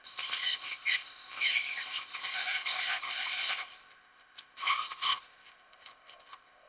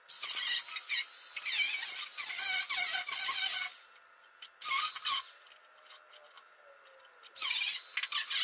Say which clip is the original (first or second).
second